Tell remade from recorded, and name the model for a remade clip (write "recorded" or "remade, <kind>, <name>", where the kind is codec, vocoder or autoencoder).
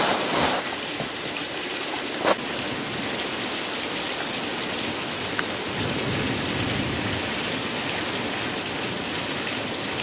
recorded